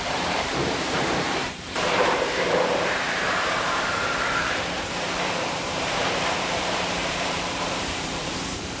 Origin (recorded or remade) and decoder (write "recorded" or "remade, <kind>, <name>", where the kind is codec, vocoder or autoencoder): remade, vocoder, BigVGAN v2